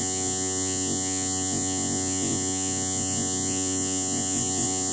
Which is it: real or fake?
fake